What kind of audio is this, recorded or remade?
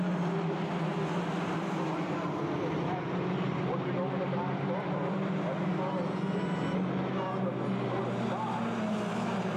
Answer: recorded